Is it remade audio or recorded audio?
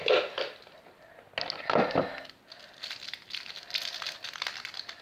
recorded